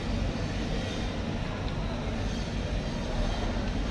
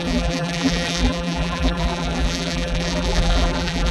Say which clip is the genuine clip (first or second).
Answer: first